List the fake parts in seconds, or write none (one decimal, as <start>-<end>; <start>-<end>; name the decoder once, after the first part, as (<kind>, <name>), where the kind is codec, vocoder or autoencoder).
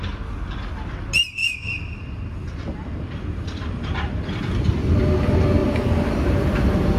1.4-4.3 (vocoder, BigVGAN v2); 5.6-6.2